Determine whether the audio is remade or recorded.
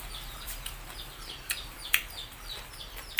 remade